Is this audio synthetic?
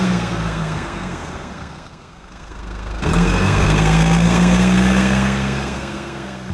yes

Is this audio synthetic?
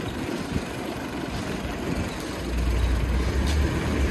no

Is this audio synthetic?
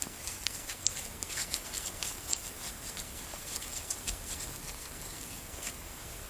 yes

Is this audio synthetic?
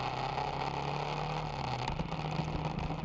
no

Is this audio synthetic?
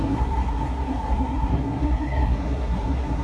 yes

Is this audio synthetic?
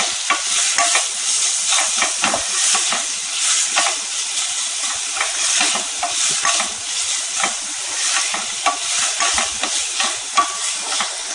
no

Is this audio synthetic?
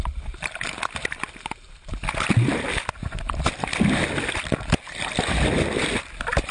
no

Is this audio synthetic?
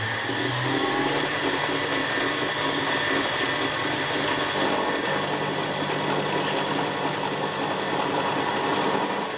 no